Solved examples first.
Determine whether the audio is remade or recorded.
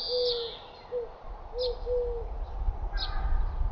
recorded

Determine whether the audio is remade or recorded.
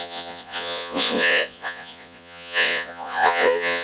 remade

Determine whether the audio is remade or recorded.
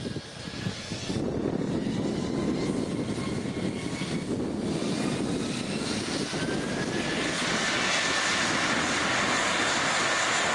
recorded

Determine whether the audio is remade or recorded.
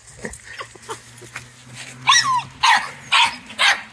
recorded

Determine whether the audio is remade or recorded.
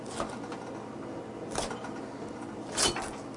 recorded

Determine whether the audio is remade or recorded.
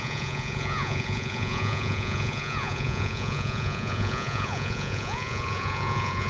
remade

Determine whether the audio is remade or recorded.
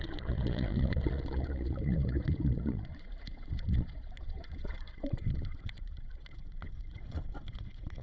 remade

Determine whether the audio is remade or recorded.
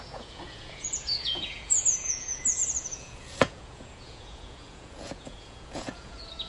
remade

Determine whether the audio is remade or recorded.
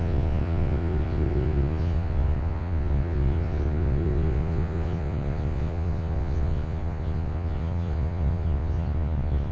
remade